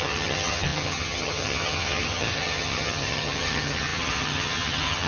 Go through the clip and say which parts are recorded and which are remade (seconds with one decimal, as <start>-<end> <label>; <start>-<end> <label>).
0.0-5.1 remade